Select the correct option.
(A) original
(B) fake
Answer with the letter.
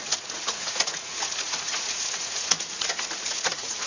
B